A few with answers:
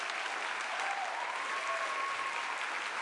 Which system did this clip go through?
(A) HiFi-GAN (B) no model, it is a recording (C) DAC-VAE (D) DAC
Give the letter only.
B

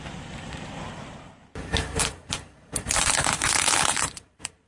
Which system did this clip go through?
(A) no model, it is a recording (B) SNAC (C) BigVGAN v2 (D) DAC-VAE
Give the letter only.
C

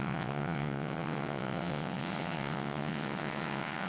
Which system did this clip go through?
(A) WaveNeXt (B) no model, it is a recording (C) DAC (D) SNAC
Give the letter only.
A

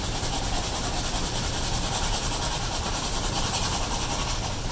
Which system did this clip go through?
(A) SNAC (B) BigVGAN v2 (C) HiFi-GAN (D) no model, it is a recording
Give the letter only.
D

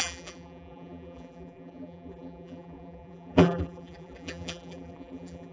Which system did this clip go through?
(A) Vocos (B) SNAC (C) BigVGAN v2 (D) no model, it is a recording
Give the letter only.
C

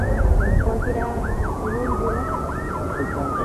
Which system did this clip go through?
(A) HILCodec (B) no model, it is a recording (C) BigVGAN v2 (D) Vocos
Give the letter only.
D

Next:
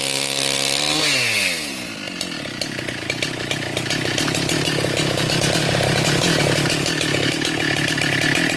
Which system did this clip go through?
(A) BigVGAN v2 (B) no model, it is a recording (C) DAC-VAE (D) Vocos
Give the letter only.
B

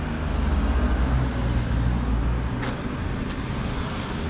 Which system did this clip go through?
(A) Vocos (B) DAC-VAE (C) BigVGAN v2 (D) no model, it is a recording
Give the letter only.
D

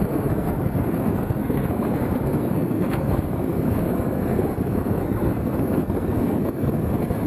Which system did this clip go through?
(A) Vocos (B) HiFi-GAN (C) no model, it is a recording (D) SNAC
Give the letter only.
D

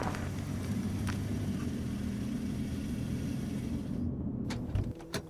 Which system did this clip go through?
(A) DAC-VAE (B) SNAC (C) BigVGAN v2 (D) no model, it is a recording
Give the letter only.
C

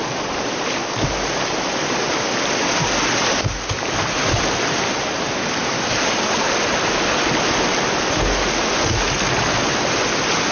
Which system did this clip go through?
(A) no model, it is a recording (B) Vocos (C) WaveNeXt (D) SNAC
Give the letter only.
A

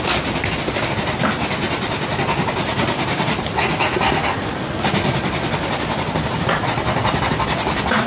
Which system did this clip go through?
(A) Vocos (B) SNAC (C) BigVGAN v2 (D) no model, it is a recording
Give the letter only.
D